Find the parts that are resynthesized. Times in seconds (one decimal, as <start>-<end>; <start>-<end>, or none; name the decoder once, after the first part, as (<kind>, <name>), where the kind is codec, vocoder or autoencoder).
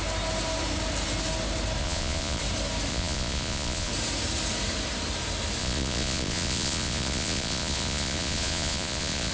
1.8-2.4 (vocoder, Vocos); 2.9-3.9; 5.6-9.3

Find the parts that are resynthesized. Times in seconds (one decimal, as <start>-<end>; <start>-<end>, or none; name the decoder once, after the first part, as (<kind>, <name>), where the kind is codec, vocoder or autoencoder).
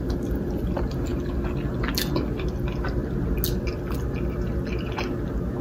none